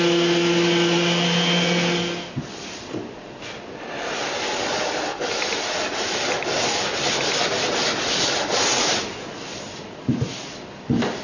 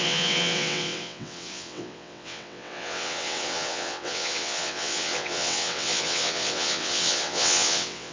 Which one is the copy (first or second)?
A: second